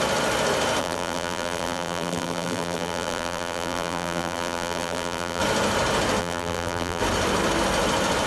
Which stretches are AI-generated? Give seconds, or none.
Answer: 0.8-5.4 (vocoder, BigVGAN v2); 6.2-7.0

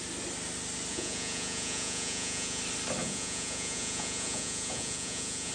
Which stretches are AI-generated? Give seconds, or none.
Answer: 0.9-2.6 (vocoder, Vocos); 3.0-5.5

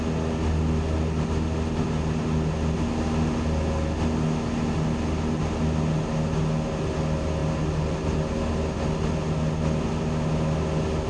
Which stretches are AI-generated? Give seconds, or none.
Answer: none

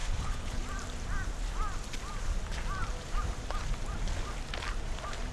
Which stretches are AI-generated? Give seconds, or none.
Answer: 0.0-0.6 (codec, HILCodec)

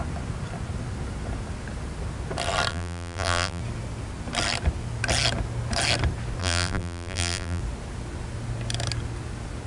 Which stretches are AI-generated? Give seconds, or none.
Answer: 2.7-3.6 (vocoder, BigVGAN v2); 6.4-7.6